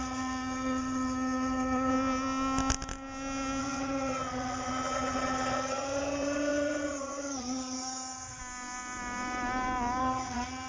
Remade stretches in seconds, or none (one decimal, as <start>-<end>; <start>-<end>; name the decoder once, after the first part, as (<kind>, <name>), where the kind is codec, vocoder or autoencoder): 0.0-1.9 (vocoder, HiFi-GAN); 3.6-8.4; 10.0-10.7